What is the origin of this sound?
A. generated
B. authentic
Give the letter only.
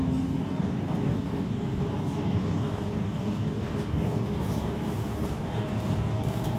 A